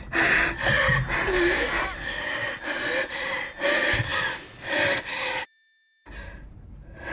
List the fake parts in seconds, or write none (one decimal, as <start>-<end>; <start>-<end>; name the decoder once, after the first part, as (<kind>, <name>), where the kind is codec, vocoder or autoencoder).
none